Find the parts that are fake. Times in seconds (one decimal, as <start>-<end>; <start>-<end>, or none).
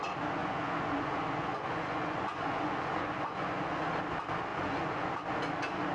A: 0.4-3.9; 4.5-5.1